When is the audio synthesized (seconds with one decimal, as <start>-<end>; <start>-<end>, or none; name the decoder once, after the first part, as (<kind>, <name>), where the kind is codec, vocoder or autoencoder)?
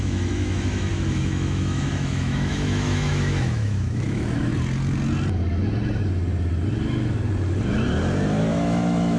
0.0-4.5 (autoencoder, DAC-VAE); 8.4-9.2